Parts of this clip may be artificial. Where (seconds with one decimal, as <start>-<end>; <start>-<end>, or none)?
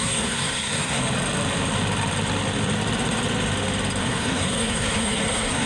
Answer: 0.0-1.0; 4.0-5.7